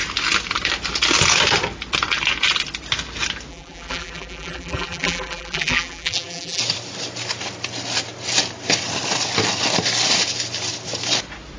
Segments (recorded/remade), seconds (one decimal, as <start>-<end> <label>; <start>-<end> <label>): 0.0-3.5 recorded; 3.5-6.6 remade; 6.6-11.6 recorded